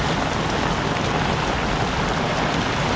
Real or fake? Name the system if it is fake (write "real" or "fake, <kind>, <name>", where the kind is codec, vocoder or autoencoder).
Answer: real